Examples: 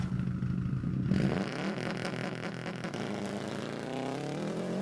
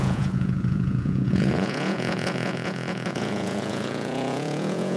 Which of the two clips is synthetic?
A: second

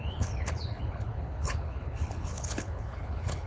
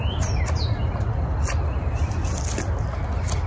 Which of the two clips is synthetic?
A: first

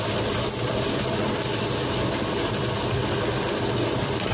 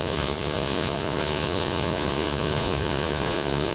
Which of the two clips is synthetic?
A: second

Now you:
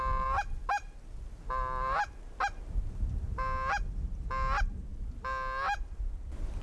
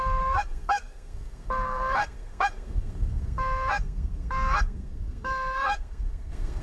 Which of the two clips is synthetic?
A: second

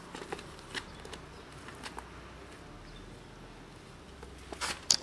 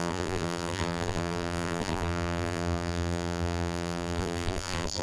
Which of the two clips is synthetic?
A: second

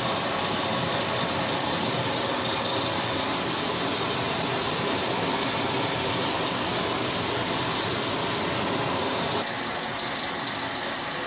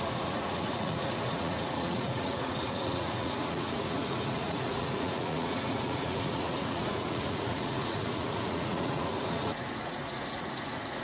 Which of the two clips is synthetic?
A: second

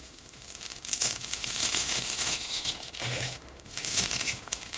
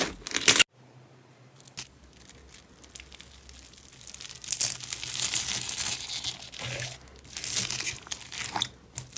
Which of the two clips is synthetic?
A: first